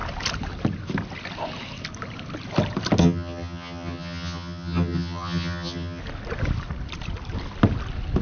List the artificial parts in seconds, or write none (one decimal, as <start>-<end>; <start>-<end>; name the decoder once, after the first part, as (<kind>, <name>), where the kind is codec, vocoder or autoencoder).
3.0-6.0 (vocoder, HiFi-GAN)